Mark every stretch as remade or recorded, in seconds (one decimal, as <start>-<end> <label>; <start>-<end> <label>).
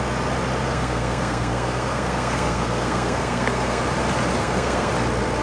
0.0-0.6 recorded; 0.6-3.8 remade; 3.8-4.4 recorded; 4.4-4.9 remade; 4.9-5.4 recorded